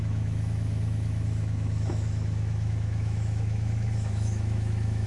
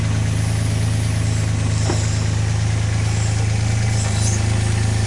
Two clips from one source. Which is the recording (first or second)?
second